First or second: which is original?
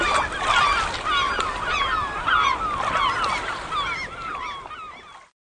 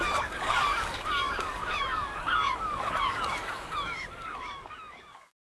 first